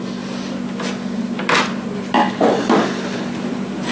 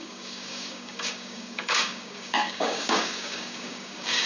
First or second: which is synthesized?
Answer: second